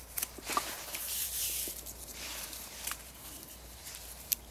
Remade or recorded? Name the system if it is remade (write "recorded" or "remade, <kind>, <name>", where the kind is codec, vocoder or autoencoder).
remade, vocoder, BigVGAN v2